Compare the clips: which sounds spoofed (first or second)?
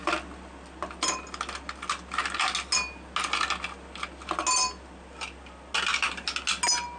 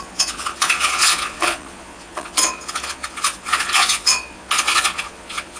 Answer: second